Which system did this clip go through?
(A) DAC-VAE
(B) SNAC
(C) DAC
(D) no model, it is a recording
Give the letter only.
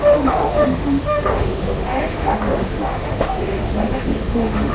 A